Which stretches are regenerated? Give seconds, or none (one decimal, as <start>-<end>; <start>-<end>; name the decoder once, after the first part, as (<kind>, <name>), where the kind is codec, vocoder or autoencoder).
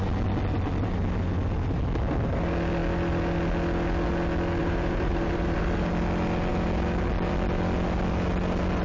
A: 4.6-5.9 (vocoder, BigVGAN v2)